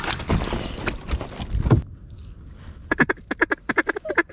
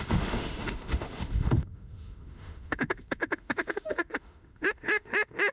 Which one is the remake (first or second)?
second